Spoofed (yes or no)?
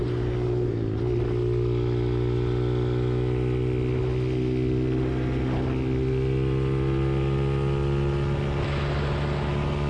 no